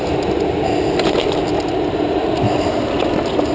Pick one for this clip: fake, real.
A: real